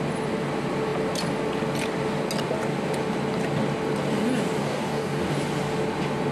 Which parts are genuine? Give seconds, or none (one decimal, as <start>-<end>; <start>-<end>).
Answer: 0.0-4.6; 5.3-6.3